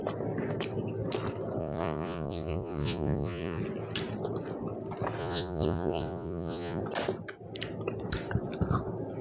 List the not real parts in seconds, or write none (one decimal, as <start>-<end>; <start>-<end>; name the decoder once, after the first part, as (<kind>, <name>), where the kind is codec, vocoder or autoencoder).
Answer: 1.6-3.6 (vocoder, Vocos); 5.2-6.8